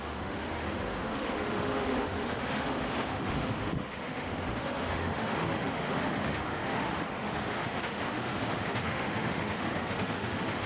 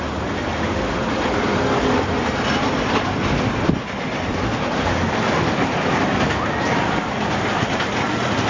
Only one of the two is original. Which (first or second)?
second